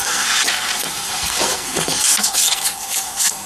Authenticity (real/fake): fake